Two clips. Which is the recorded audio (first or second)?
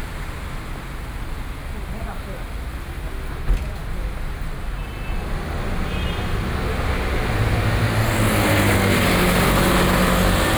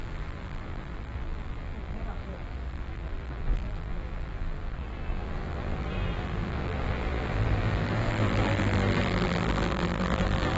first